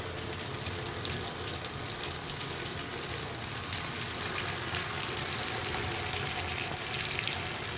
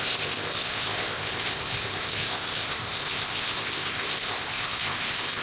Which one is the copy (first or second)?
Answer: second